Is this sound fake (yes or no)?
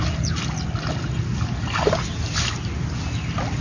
no